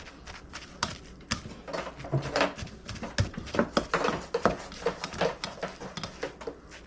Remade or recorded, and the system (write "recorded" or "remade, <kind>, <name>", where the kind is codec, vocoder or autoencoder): recorded